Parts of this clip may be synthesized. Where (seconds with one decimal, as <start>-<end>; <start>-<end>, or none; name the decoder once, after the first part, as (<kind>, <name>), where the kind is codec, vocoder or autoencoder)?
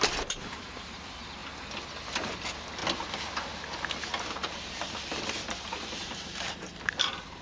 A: 0.0-1.4 (vocoder, BigVGAN v2); 2.2-2.8; 4.3-7.4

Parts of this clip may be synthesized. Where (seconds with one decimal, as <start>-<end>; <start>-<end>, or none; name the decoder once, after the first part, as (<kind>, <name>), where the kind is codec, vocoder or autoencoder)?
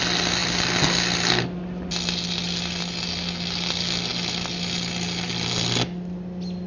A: none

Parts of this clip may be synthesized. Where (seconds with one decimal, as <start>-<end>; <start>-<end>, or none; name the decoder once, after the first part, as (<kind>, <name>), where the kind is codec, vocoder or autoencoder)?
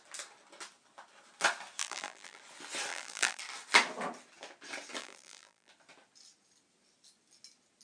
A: 1.8-2.4 (vocoder, BigVGAN v2); 2.9-3.4; 5.0-5.7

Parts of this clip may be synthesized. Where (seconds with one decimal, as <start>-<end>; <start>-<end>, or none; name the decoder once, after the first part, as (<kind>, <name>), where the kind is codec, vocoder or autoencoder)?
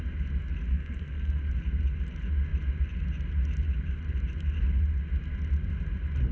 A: 0.7-1.4 (codec, SNAC)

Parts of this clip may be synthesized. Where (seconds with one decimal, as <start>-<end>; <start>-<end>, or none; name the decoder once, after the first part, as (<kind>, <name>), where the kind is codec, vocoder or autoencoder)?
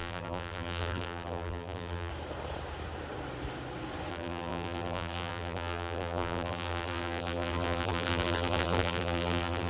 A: 0.0-2.1 (vocoder, BigVGAN v2); 4.1-9.7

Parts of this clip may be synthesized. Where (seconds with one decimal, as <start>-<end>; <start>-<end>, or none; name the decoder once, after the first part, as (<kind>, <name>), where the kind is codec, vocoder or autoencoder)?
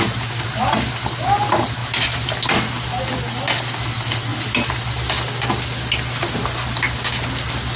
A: none